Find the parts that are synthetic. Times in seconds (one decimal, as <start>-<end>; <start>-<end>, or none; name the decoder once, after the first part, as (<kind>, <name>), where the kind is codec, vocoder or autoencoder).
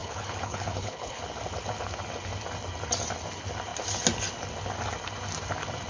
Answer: 0.0-1.2 (codec, HILCodec)